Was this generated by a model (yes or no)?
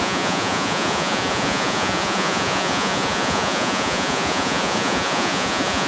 yes